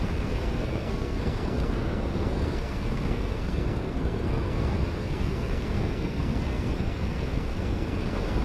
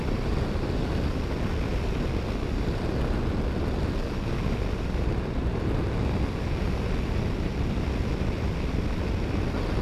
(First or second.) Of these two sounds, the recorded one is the second